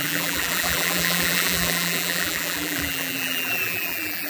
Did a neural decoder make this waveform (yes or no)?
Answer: yes